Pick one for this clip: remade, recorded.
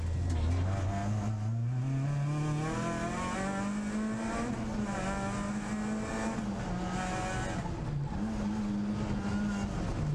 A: recorded